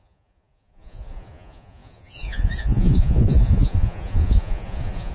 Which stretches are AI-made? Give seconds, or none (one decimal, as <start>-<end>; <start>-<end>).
0.0-5.1